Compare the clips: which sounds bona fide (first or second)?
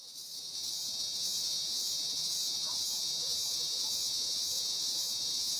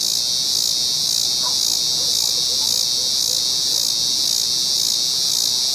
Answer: second